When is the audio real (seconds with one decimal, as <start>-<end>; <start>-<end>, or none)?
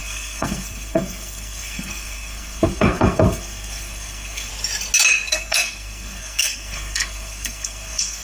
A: 4.5-5.3